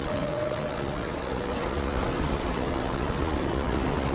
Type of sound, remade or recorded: remade